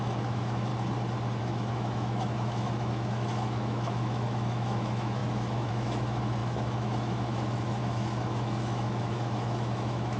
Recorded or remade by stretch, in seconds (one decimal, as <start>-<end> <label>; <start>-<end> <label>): 0.0-0.7 remade; 0.7-1.4 recorded; 1.4-10.2 remade